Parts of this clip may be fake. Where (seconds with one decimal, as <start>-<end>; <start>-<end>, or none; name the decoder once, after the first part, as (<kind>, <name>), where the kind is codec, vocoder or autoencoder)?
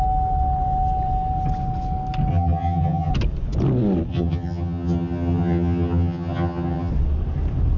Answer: 2.3-3.1 (vocoder, HiFi-GAN); 4.1-6.9